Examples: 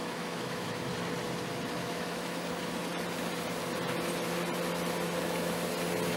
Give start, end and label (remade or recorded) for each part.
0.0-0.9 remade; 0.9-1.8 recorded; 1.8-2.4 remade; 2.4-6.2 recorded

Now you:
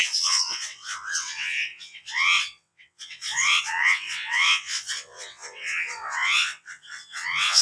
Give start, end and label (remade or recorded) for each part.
0.0-7.6 remade

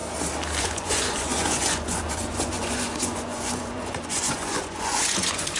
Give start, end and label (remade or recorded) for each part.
0.0-0.6 recorded; 0.6-5.6 remade